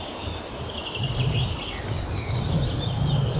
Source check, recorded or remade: recorded